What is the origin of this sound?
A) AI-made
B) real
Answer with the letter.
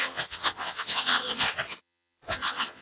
A